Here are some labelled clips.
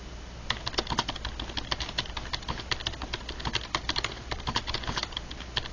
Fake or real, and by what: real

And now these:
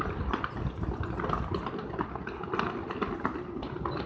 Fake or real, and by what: real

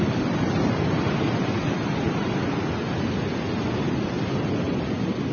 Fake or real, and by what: real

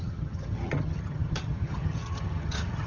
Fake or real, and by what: fake, vocoder, HiFi-GAN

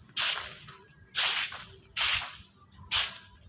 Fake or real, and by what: real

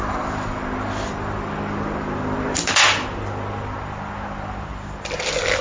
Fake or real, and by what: real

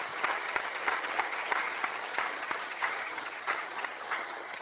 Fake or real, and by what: fake, vocoder, HiFi-GAN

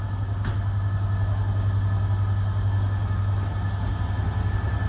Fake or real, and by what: real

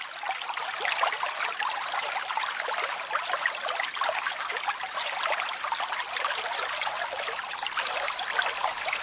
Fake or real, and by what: real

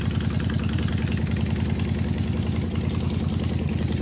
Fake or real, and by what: real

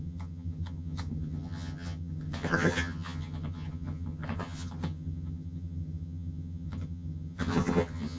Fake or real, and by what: fake, vocoder, HiFi-GAN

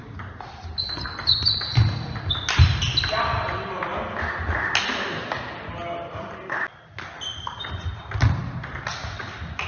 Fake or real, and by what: real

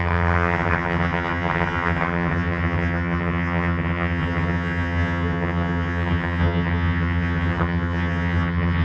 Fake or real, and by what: fake, vocoder, HiFi-GAN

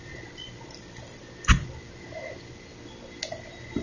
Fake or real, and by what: real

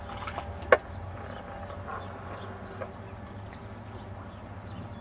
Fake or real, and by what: real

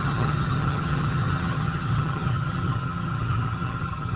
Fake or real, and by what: fake, vocoder, HiFi-GAN